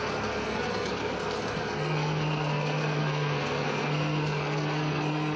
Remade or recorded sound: remade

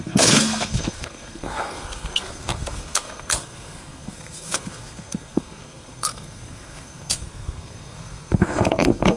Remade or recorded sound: remade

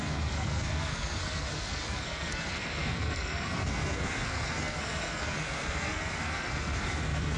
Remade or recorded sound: remade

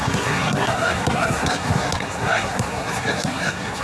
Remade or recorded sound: remade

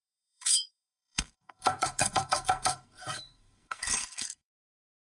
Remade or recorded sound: remade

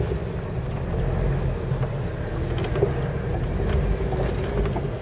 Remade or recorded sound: recorded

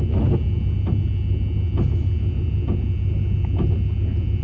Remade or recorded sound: recorded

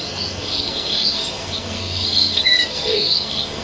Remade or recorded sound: remade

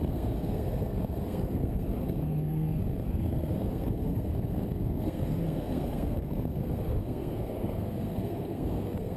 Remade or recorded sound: remade